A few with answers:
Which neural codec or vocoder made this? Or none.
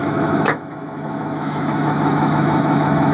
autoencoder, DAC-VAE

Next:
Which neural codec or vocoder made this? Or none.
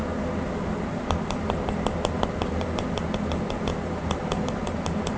none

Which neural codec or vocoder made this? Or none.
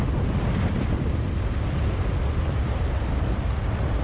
none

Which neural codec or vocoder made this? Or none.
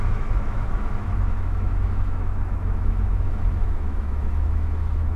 autoencoder, DAC-VAE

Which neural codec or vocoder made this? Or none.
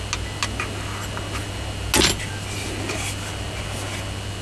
none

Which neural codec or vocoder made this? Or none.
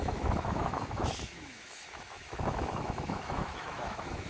autoencoder, DAC-VAE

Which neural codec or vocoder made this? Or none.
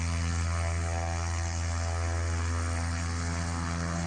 none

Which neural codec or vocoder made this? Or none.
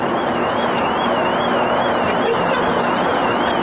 none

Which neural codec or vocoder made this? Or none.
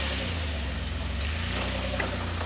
none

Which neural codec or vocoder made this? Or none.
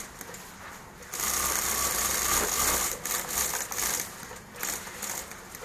none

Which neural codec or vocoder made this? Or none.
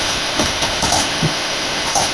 autoencoder, DAC-VAE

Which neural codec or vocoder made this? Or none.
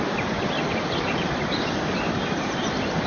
none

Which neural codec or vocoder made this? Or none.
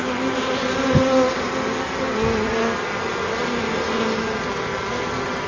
none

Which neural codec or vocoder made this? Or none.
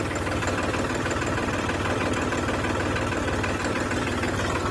none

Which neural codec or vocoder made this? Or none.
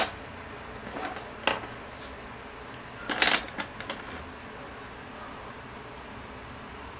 none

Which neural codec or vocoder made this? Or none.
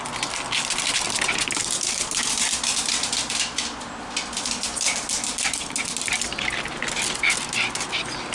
none